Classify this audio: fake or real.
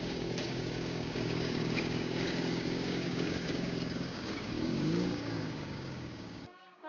fake